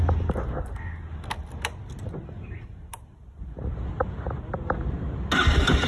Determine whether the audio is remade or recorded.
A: recorded